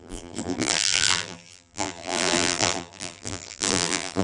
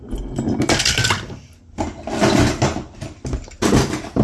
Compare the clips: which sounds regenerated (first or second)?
first